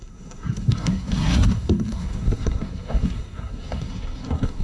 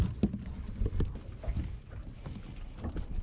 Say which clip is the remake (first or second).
first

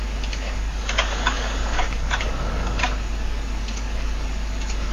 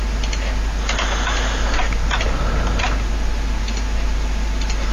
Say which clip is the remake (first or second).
first